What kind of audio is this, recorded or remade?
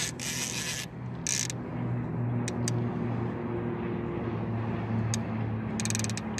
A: recorded